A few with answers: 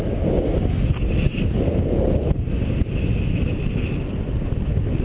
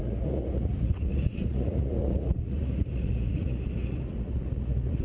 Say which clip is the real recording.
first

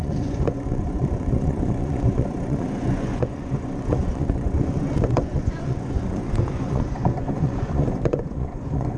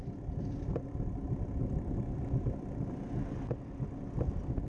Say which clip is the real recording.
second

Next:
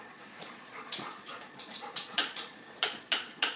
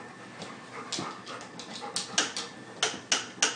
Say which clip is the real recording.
second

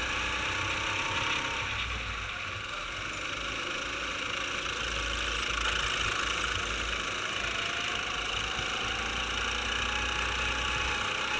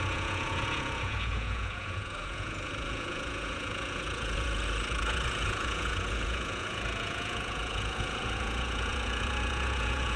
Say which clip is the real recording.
first